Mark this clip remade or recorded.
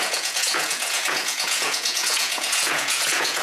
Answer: remade